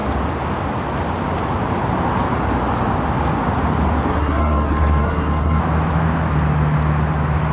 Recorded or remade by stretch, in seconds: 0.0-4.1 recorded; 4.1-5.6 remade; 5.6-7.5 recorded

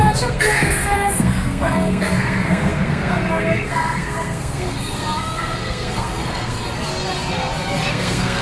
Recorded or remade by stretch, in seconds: 0.0-6.6 remade; 6.6-7.9 recorded; 7.9-8.4 remade

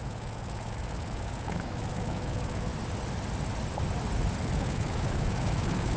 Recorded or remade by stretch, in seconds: 0.0-2.7 remade; 2.7-4.4 recorded; 4.4-6.0 remade

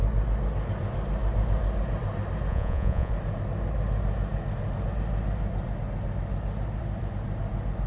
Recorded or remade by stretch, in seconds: 0.0-2.5 recorded; 2.5-3.1 remade; 3.1-7.9 recorded

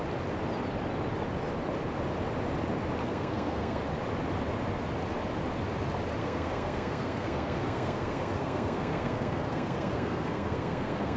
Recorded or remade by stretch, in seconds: 0.0-3.0 recorded; 3.0-3.8 remade; 3.8-6.2 recorded; 6.2-11.2 remade

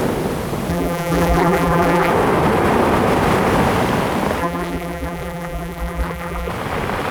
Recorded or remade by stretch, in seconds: 0.0-0.7 recorded; 0.7-2.1 remade; 2.1-4.4 recorded; 4.4-6.5 remade; 6.5-7.1 recorded

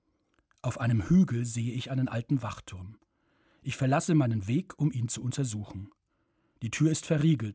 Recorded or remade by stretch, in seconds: 0.0-7.5 recorded

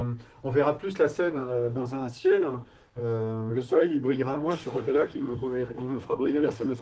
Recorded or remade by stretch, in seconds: 0.0-1.3 recorded; 1.3-3.0 remade; 3.0-3.5 recorded; 3.5-6.8 remade